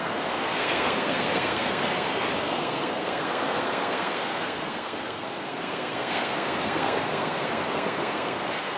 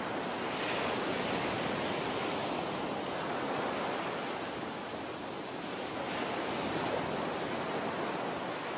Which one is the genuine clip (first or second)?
second